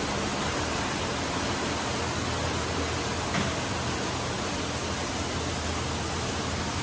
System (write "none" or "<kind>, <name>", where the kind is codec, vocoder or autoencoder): none